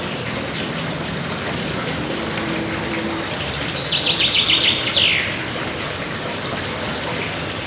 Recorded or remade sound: recorded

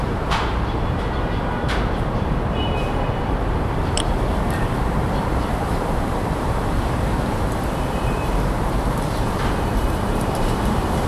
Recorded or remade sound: remade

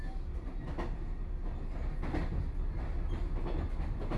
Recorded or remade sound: recorded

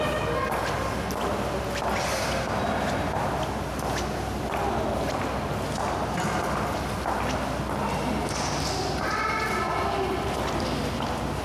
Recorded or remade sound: recorded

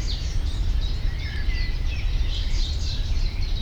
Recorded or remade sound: remade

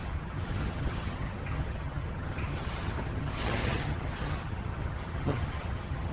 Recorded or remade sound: remade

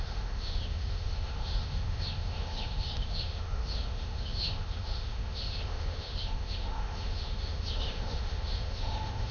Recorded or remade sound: remade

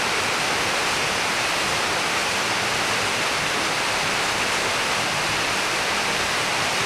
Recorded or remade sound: recorded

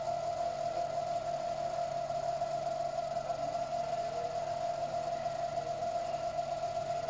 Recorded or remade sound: recorded